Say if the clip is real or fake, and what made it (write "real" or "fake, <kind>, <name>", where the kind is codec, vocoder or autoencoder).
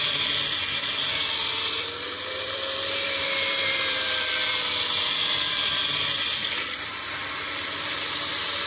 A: fake, vocoder, BigVGAN v2